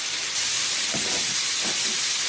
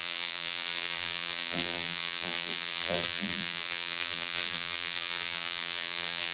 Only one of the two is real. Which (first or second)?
first